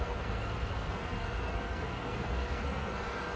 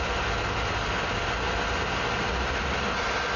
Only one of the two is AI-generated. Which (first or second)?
first